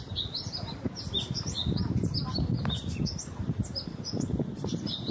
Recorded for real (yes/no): yes